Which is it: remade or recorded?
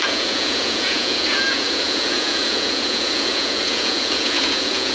remade